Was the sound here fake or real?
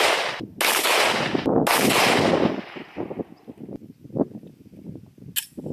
real